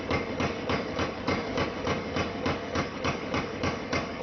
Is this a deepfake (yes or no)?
yes